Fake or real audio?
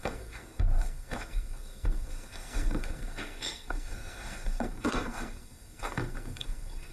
fake